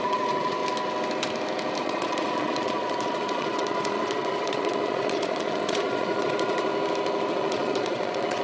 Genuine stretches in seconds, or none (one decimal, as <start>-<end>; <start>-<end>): 0.6-1.8; 6.7-7.3